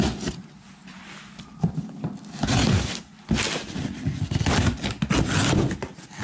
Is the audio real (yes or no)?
yes